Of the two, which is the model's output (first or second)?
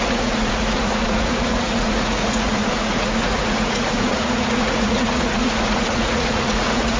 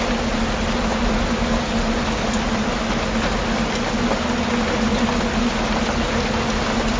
first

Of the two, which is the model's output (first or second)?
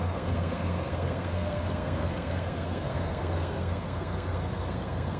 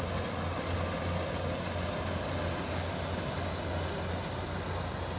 first